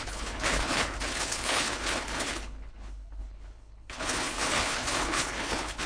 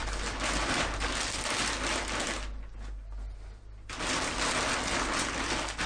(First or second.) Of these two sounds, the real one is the second